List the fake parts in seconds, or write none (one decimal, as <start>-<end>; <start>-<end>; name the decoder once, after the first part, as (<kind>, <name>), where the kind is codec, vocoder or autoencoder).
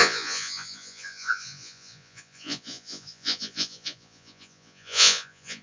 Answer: 0.0-5.6 (vocoder, Vocos)